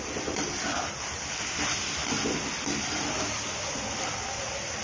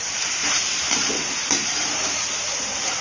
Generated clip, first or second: second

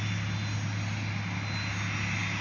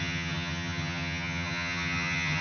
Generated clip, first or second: second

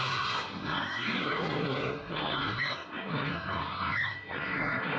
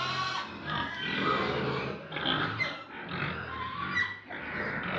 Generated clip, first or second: first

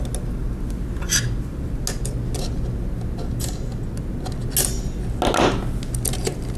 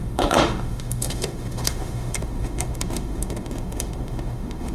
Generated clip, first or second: second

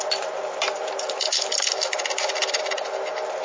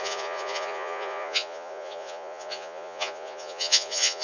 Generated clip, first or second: second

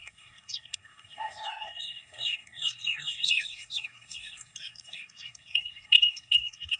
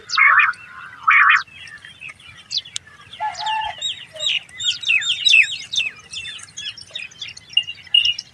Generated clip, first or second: first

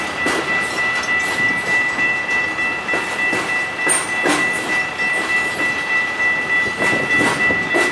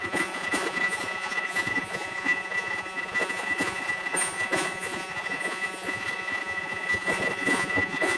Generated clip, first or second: second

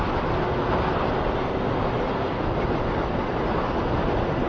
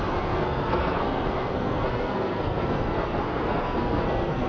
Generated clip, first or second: second